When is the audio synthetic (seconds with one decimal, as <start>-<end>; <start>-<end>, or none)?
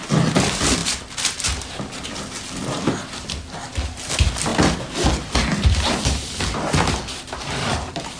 none